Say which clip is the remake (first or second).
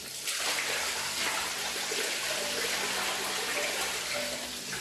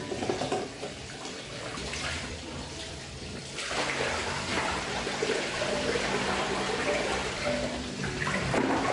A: second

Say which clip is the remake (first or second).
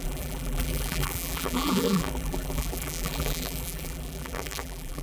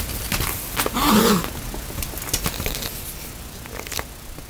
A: first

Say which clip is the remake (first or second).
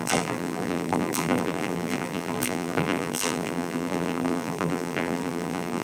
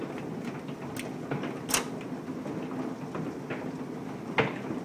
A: first